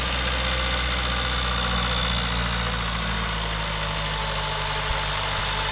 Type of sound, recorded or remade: recorded